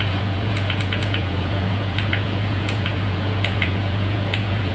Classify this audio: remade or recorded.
remade